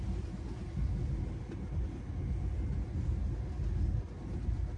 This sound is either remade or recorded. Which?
recorded